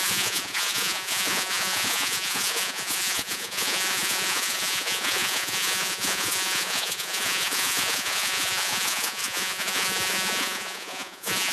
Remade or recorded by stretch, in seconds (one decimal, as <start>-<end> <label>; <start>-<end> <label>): 0.0-11.5 remade

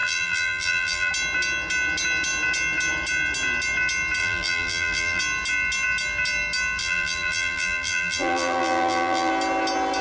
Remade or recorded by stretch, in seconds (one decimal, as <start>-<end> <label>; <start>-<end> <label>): 0.0-1.1 remade; 1.1-4.2 recorded; 4.2-5.2 remade; 5.2-6.8 recorded; 6.8-9.3 remade; 9.3-10.0 recorded

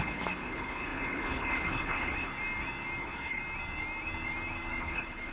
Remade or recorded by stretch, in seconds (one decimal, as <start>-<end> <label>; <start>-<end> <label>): 0.0-2.3 remade; 2.3-3.0 recorded; 3.0-3.4 remade; 3.4-4.8 recorded; 4.8-5.3 remade

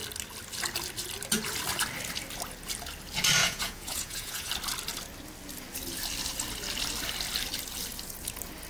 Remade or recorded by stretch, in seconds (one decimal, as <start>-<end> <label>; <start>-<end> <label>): 0.0-3.4 recorded; 3.4-4.5 remade; 4.5-8.7 recorded